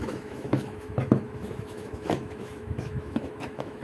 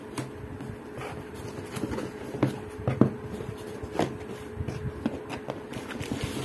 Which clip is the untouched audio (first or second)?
second